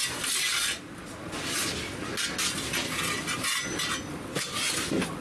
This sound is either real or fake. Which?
real